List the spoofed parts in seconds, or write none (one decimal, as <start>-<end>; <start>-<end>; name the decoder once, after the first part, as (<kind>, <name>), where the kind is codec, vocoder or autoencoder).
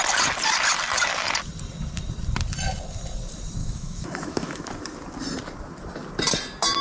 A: 3.6-4.6 (autoencoder, DAC-VAE)